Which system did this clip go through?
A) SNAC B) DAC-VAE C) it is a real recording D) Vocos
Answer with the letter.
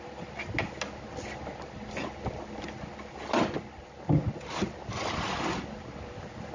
C